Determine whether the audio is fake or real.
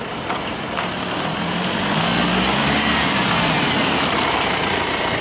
real